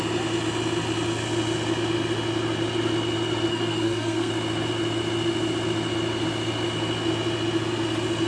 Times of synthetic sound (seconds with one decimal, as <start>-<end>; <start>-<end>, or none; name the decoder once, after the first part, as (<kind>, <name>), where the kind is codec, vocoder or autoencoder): 3.5-4.3 (codec, SNAC)